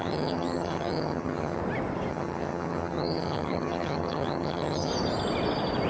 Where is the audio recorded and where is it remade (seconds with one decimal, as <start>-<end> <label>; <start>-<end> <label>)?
0.0-1.6 remade; 1.6-2.1 recorded; 2.1-4.9 remade; 4.9-5.9 recorded